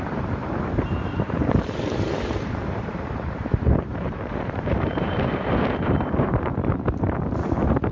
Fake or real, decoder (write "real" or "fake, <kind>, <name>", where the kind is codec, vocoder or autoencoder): fake, vocoder, BigVGAN v2